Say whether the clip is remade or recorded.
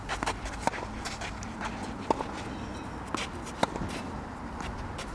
recorded